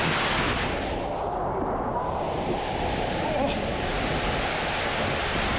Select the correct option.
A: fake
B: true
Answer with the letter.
B